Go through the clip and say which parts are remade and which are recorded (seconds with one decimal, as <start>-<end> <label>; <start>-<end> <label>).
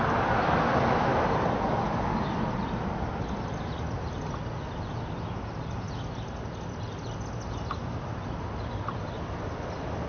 0.0-10.1 recorded